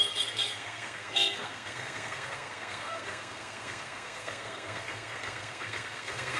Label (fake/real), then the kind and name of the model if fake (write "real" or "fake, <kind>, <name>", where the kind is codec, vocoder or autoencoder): fake, codec, SNAC